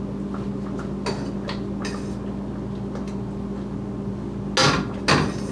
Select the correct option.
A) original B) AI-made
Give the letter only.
A